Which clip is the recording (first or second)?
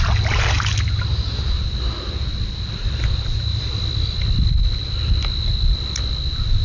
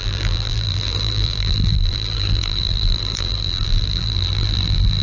first